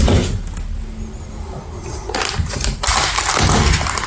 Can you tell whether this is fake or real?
real